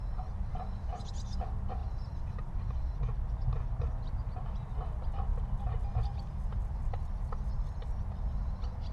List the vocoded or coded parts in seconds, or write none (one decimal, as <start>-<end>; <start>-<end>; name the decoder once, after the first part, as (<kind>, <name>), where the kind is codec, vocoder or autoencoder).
1.8-2.7 (vocoder, BigVGAN v2)